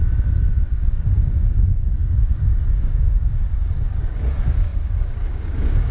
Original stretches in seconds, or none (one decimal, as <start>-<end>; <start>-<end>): 0.0-0.6